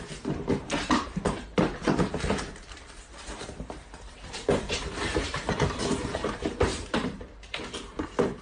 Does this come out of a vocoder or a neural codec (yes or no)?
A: yes